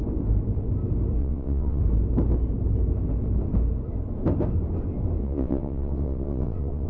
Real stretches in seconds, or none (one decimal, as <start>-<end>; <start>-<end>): 0.0-1.2; 1.8-5.2